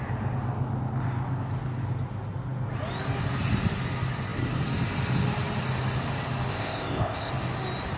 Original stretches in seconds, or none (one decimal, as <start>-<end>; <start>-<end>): 0.0-6.5; 7.3-8.0